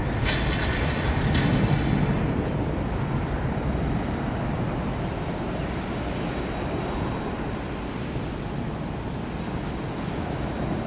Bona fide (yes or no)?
yes